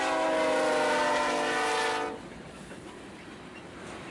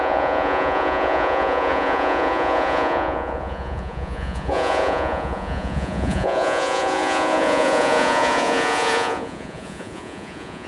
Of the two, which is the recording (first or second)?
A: first